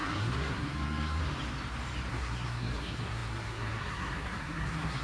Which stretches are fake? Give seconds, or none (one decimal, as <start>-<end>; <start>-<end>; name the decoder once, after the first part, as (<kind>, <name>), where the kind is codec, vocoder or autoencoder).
0.0-1.2 (codec, SNAC); 2.1-5.0